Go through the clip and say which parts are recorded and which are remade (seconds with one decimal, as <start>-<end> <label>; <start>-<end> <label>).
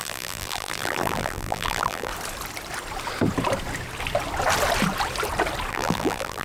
0.0-2.1 remade; 2.1-5.7 recorded; 5.7-6.4 remade